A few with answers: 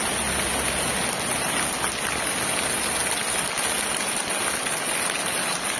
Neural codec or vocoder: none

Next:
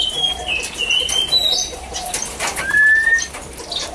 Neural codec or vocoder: none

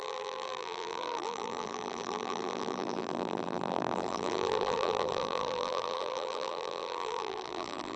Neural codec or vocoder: vocoder, BigVGAN v2